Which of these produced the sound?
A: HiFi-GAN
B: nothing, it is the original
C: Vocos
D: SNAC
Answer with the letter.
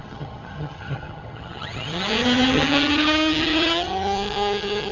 A